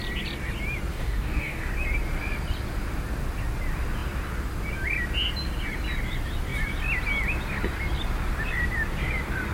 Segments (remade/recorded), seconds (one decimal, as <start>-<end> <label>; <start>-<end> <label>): 0.0-0.9 recorded; 0.9-1.7 remade; 1.7-9.5 recorded